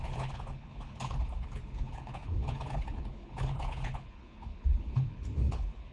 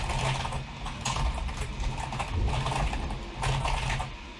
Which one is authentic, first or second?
second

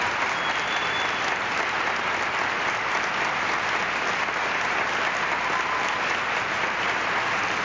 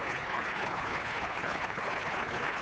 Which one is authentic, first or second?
first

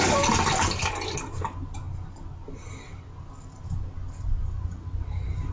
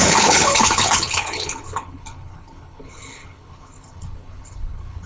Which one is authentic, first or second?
first